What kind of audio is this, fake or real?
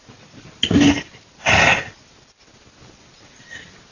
real